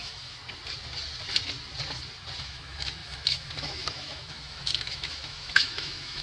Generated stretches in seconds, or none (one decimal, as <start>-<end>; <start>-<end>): 0.0-0.4; 2.4-6.2